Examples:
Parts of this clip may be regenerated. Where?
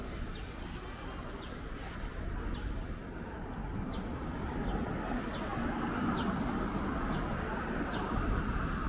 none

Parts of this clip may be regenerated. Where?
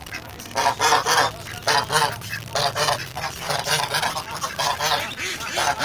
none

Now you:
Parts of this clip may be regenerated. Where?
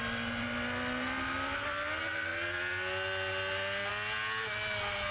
none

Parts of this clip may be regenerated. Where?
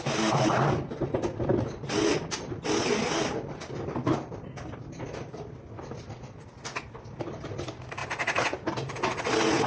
0.0-8.0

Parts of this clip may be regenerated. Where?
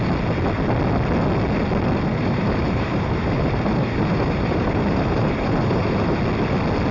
2.1-6.2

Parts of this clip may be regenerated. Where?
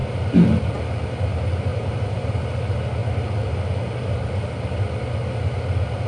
1.7-2.3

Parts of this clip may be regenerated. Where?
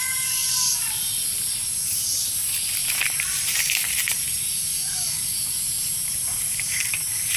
2.8-7.4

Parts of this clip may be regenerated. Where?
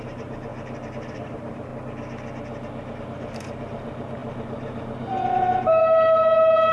0.0-0.5; 1.1-1.7; 3.0-5.8